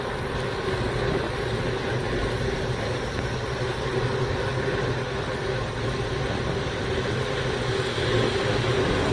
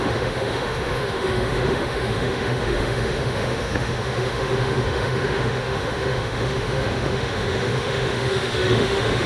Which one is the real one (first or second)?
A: first